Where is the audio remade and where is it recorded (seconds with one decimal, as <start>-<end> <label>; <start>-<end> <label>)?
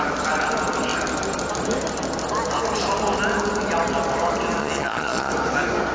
0.0-4.6 recorded; 4.6-5.3 remade; 5.3-5.9 recorded